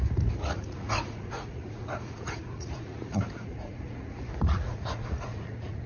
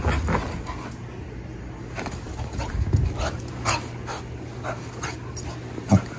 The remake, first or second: first